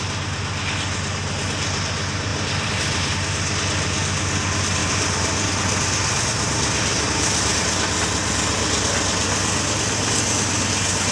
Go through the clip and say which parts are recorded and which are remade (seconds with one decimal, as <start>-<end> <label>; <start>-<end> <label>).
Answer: 0.0-2.3 recorded; 2.3-3.1 remade; 3.1-4.8 recorded; 4.8-5.5 remade; 5.5-6.9 recorded; 6.9-7.6 remade; 7.6-11.1 recorded